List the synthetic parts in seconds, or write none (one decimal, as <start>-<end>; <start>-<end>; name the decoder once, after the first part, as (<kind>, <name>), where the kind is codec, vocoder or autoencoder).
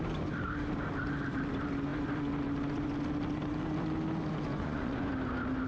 4.5-5.1 (vocoder, Vocos)